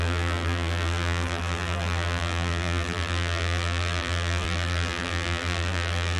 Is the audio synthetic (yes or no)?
yes